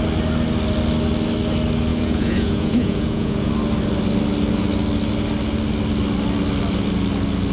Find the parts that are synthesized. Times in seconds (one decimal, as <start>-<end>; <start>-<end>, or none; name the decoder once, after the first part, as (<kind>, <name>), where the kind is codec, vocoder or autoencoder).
1.9-3.5 (vocoder, Vocos)